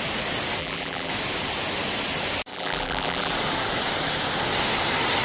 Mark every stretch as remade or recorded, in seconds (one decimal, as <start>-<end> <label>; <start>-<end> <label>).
0.0-0.6 recorded; 0.6-1.1 remade; 1.1-2.5 recorded; 2.5-3.3 remade; 3.3-5.2 recorded